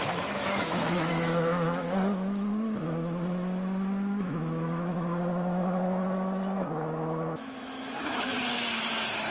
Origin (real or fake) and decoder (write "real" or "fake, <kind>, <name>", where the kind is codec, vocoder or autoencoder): fake, autoencoder, DAC-VAE